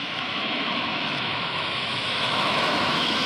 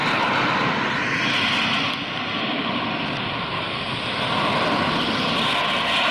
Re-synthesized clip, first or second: first